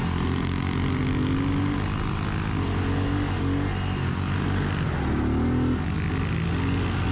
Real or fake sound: real